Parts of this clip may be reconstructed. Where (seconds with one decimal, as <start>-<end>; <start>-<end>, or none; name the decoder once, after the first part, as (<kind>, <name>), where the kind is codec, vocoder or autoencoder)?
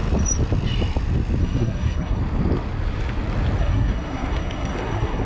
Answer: 1.4-2.2 (codec, SNAC); 3.6-5.2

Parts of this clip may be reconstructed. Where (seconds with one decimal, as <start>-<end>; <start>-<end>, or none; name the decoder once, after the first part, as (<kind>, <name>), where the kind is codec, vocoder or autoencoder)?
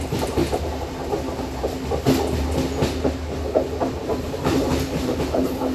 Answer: 0.0-0.4 (vocoder, BigVGAN v2); 3.8-5.7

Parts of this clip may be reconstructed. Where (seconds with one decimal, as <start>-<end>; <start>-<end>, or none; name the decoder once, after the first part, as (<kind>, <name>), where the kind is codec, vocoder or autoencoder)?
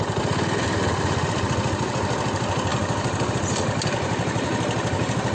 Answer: none